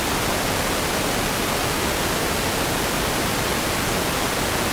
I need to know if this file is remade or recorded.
recorded